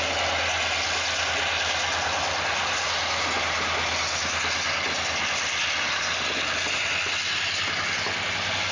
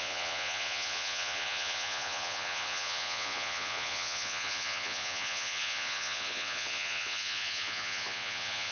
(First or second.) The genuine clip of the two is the first